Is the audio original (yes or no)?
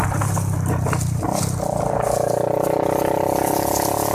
yes